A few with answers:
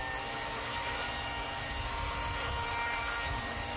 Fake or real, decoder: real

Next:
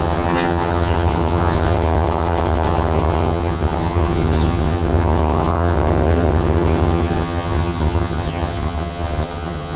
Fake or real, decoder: fake, vocoder, HiFi-GAN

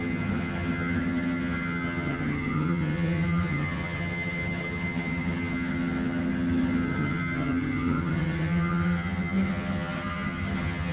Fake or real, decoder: fake, vocoder, HiFi-GAN